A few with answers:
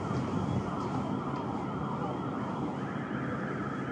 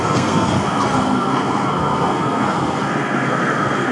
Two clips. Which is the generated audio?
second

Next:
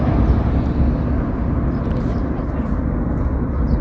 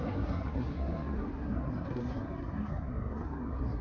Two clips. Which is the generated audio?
second